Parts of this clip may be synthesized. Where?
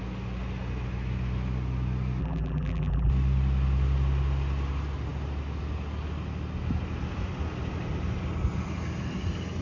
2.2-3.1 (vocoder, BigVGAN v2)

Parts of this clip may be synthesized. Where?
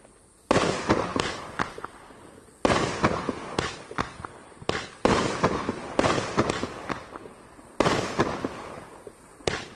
1.1-1.8 (vocoder, BigVGAN v2)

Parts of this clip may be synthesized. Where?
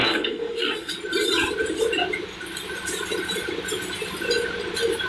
0.0-0.9 (codec, SNAC)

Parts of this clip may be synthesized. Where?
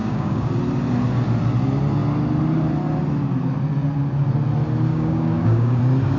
0.0-0.5 (codec, DAC); 4.9-5.8